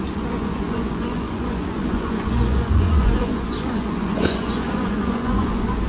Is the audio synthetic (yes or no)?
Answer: yes